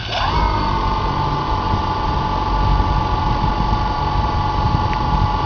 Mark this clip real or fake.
real